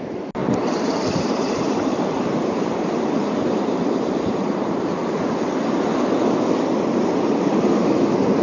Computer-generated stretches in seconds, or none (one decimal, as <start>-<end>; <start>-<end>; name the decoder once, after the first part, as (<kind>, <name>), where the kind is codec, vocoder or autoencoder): 0.4-5.2 (vocoder, BigVGAN v2)